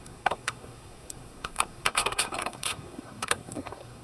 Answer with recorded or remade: remade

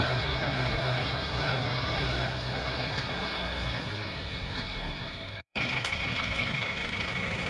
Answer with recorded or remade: remade